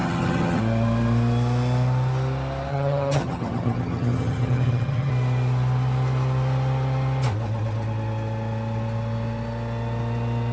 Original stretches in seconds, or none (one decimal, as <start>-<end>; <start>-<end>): 0.6-2.7; 5.1-10.5